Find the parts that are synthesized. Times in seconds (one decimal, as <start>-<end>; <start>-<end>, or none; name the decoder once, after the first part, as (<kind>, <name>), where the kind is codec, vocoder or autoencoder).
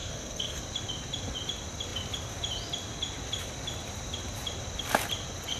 0.0-0.6 (codec, SNAC)